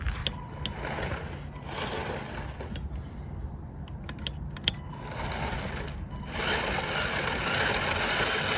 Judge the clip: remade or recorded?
recorded